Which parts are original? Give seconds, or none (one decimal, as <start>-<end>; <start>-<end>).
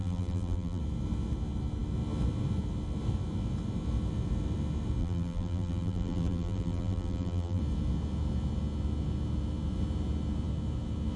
0.8-5.0; 7.6-11.2